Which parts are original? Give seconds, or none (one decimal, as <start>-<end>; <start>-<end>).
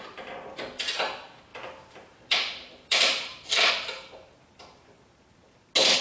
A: 0.0-1.5; 3.7-6.0